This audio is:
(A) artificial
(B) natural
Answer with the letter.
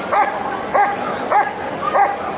B